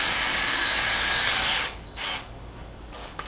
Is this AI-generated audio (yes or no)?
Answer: yes